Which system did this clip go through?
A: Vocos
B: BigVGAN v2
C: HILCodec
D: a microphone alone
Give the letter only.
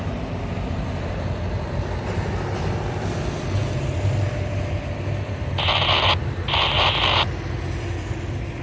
D